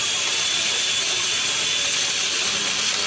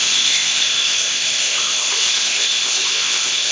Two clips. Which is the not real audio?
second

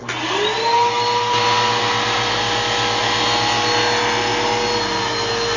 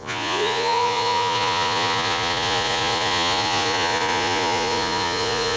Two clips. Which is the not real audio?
second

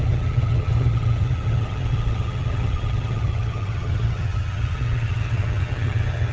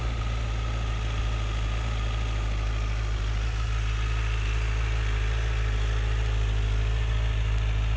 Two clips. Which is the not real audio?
first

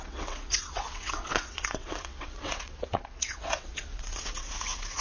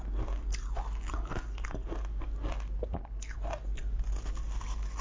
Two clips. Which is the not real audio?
first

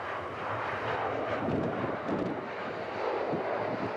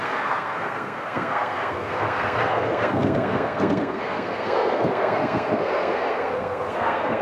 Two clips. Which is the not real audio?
second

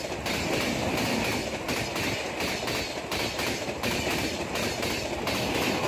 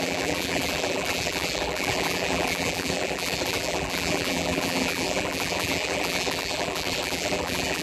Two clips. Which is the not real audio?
second